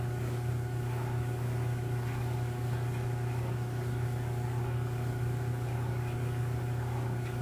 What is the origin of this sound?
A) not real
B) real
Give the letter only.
A